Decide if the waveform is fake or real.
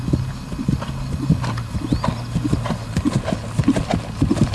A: real